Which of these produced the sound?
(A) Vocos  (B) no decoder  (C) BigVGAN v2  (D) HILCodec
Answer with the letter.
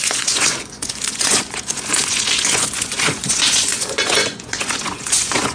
A